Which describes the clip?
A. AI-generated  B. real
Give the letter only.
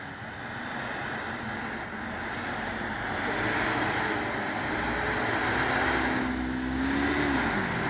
B